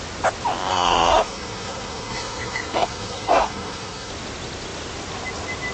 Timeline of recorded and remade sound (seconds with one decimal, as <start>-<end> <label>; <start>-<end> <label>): 0.0-0.7 recorded; 0.7-4.1 remade; 4.1-5.7 recorded